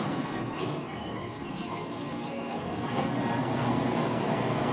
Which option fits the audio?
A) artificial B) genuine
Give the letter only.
A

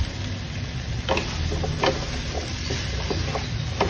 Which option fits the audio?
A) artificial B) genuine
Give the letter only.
B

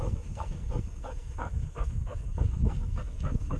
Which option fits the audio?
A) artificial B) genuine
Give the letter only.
A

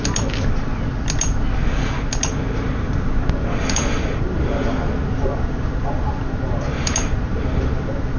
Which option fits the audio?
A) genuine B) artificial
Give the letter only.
A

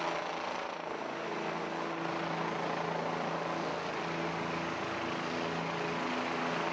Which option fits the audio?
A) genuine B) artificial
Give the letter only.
A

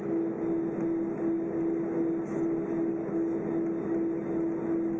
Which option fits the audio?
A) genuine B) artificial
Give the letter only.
A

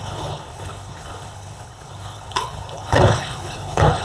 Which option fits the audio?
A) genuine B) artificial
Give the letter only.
B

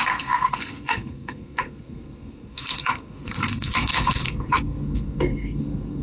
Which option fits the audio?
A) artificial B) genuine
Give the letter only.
A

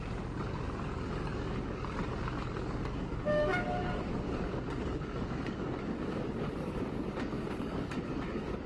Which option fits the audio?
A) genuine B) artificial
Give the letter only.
B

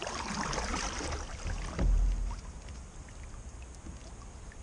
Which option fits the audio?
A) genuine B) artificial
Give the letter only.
A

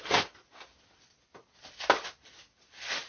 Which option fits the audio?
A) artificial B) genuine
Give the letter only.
B